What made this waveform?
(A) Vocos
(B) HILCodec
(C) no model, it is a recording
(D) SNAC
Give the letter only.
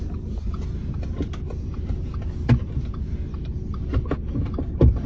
C